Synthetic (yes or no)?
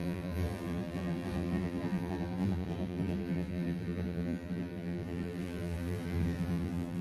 yes